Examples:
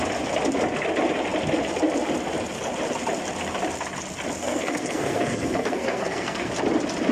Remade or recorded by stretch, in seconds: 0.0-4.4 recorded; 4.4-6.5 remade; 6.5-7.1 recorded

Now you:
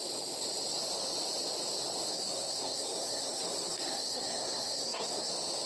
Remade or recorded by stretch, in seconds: 0.0-2.1 recorded; 2.1-5.3 remade; 5.3-5.7 recorded